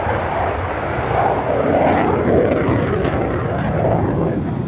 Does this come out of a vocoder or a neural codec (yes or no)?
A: yes